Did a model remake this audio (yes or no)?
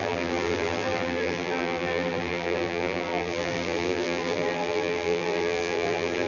yes